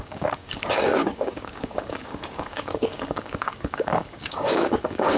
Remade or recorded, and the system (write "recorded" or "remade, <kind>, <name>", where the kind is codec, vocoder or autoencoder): remade, codec, DAC